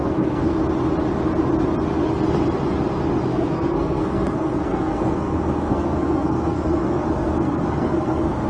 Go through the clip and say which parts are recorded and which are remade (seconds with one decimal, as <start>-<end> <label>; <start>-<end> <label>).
0.0-0.6 remade; 0.6-3.3 recorded; 3.3-8.5 remade